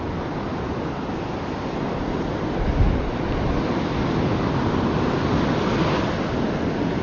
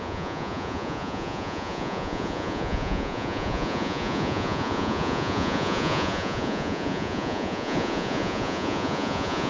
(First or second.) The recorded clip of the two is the first